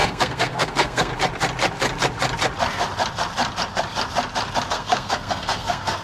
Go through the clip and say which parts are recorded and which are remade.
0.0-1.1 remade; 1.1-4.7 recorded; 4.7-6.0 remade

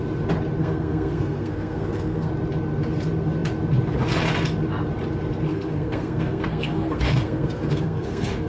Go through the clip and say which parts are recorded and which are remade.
0.0-0.6 recorded; 0.6-2.3 remade; 2.3-5.5 recorded; 5.5-8.5 remade

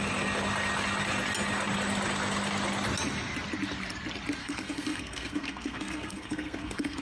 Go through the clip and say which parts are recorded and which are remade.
0.0-4.4 recorded; 4.4-7.0 remade

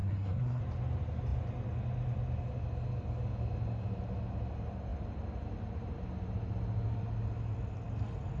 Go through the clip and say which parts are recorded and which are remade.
0.0-0.6 remade; 0.6-8.4 recorded

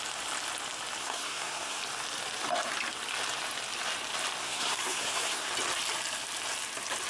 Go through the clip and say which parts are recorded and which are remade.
0.0-1.0 recorded; 1.0-1.8 remade; 1.8-4.4 recorded; 4.4-5.5 remade; 5.5-7.1 recorded

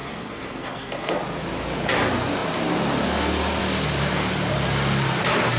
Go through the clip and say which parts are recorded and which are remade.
0.0-1.2 remade; 1.2-5.6 recorded